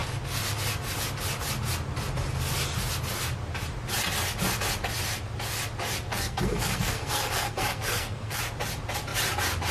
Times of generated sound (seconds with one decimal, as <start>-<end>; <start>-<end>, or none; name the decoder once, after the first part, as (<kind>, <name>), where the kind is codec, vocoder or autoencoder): 6.1-8.4 (codec, SNAC)